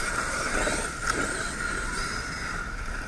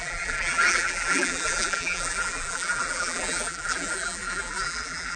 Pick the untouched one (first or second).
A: first